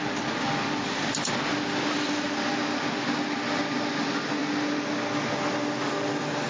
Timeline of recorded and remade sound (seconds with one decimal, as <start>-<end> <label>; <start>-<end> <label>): 0.0-6.5 recorded